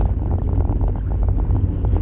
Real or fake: real